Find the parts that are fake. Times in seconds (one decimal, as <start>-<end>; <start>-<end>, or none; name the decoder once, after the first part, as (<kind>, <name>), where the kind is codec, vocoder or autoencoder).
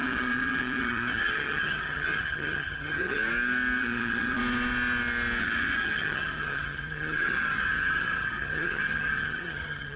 0.0-3.2 (vocoder, HiFi-GAN); 3.8-4.4; 5.4-10.0